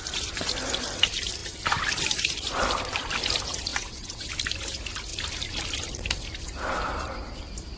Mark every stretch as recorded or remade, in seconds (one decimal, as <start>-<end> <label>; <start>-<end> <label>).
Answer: 0.0-3.7 recorded; 3.7-4.3 remade; 4.3-7.8 recorded